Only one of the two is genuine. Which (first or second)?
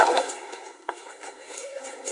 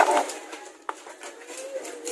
second